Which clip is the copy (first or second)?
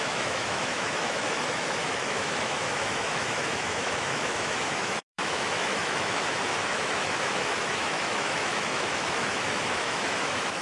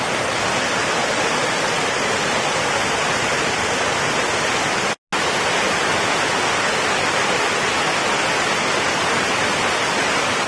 first